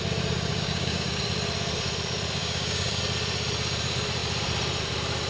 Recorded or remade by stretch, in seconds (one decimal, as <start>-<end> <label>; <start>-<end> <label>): 0.0-0.5 recorded; 0.5-1.2 remade; 1.2-2.4 recorded; 2.4-3.0 remade; 3.0-5.3 recorded